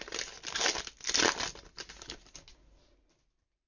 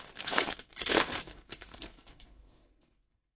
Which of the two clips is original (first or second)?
first